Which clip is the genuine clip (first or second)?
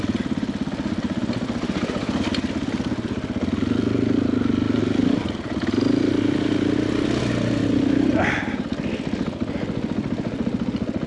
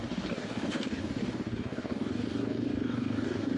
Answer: first